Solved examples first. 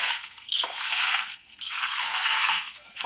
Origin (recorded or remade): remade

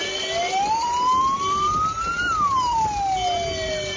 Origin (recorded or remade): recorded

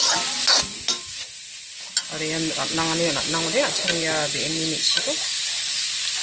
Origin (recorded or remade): recorded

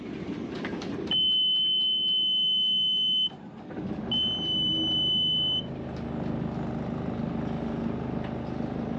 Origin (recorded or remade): recorded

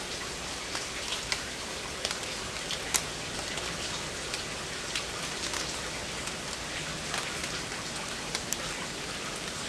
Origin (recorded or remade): recorded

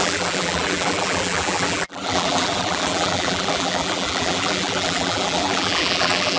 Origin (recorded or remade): remade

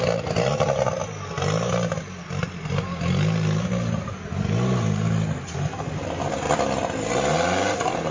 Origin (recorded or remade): recorded